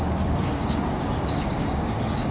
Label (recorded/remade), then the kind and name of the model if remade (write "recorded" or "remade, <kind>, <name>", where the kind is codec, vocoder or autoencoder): remade, codec, DAC